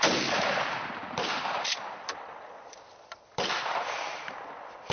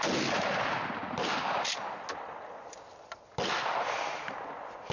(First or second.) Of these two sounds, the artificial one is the first